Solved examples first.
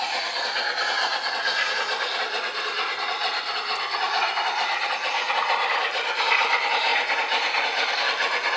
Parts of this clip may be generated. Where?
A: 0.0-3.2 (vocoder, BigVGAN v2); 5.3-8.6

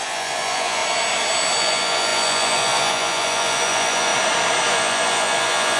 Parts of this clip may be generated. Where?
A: 0.0-0.8 (vocoder, Vocos); 1.6-4.1; 4.7-5.8

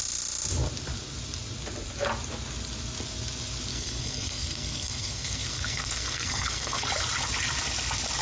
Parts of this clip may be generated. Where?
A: 3.7-6.9 (codec, SNAC)

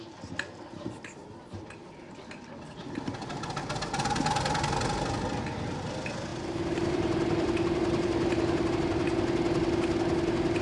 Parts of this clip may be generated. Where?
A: 1.2-3.4 (vocoder, BigVGAN v2); 6.3-8.7

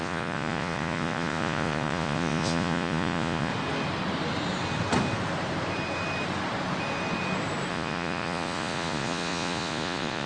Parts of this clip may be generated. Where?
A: 0.0-3.5 (vocoder, Vocos); 7.7-10.3

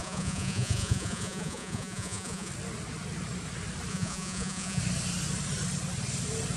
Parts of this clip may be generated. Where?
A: 0.0-2.5 (vocoder, Vocos); 3.9-4.8